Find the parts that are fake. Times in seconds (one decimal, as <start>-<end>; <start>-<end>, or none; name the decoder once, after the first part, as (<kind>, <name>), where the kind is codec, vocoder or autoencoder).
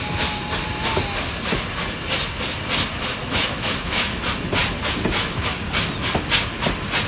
3.2-4.2 (autoencoder, DAC-VAE)